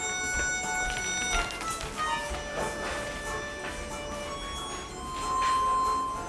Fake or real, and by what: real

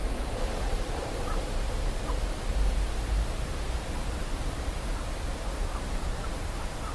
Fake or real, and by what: fake, vocoder, BigVGAN v2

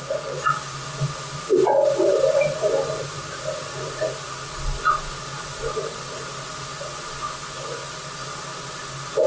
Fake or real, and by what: real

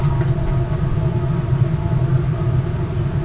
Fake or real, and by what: real